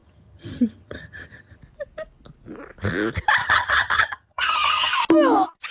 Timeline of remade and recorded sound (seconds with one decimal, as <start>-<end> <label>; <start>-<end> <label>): 0.0-1.6 remade; 1.6-3.4 recorded; 3.4-4.9 remade; 4.9-5.7 recorded